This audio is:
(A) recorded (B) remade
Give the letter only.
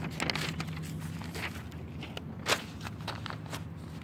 A